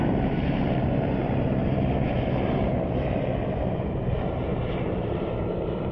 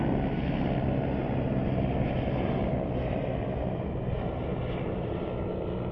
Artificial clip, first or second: first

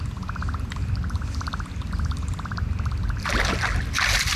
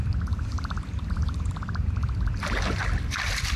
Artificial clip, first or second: second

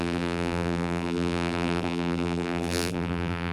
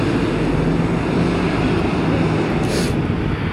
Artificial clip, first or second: first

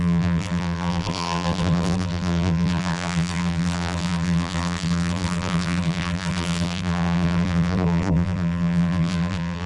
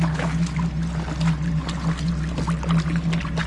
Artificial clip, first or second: first